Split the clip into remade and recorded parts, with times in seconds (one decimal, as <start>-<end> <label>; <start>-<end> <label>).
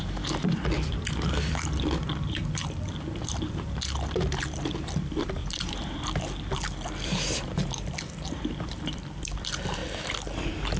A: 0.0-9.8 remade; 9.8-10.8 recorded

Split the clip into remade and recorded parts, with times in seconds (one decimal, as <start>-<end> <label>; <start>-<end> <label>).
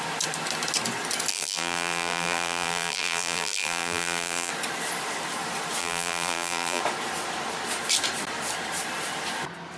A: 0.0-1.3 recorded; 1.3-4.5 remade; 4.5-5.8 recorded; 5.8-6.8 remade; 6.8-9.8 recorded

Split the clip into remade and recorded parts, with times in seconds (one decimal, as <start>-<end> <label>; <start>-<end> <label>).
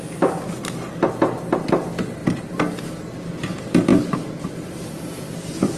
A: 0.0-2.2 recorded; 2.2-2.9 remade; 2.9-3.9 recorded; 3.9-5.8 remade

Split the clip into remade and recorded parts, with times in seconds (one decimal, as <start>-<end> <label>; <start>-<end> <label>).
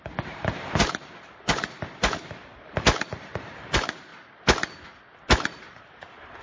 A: 0.0-2.5 remade; 2.5-3.1 recorded; 3.1-4.1 remade; 4.1-5.6 recorded; 5.6-6.4 remade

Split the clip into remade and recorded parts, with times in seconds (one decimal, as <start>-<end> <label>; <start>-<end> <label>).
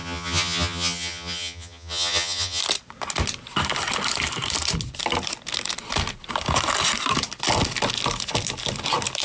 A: 0.0-2.6 remade; 2.6-9.2 recorded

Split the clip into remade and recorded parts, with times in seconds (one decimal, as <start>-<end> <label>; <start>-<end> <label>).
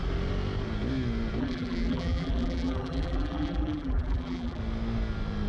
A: 0.0-1.4 recorded; 1.4-4.6 remade; 4.6-5.5 recorded